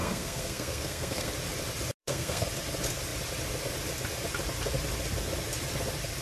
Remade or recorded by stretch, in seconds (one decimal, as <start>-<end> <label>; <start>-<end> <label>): 0.0-1.3 remade; 1.3-2.0 recorded; 2.0-2.5 remade; 2.5-6.2 recorded